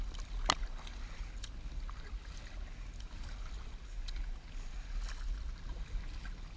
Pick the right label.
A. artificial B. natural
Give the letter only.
B